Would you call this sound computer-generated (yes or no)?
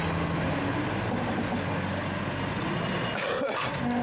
no